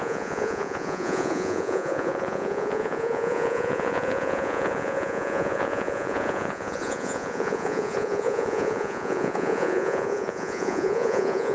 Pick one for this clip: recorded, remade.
remade